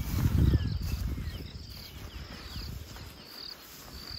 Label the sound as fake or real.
real